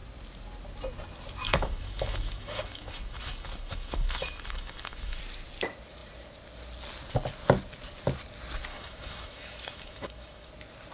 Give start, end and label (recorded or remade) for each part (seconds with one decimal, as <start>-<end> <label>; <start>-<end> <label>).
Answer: 0.0-1.4 recorded; 1.4-5.2 remade; 5.2-8.7 recorded; 8.7-10.5 remade; 10.5-10.9 recorded